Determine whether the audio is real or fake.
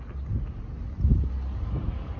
real